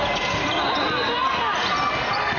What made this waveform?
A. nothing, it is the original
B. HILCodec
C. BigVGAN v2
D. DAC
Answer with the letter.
A